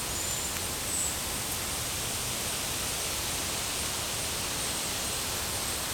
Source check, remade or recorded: recorded